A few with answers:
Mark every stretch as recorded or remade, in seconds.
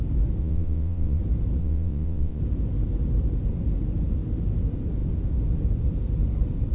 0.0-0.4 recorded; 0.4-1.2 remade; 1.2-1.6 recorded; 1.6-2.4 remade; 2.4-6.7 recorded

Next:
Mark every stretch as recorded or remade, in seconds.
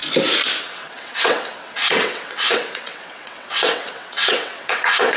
0.0-0.6 recorded; 0.6-5.2 remade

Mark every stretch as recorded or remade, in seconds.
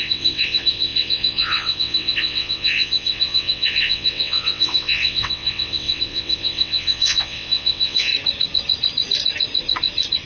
0.0-8.1 remade; 8.1-10.3 recorded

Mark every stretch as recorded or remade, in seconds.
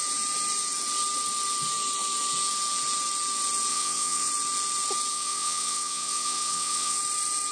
0.0-3.7 recorded; 3.7-4.3 remade; 4.3-5.1 recorded; 5.1-7.0 remade; 7.0-7.5 recorded